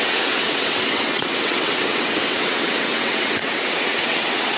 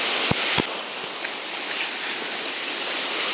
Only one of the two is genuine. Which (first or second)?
second